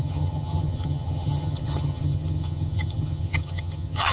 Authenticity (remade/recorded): remade